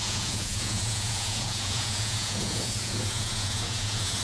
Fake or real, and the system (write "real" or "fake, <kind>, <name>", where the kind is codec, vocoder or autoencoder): fake, vocoder, Vocos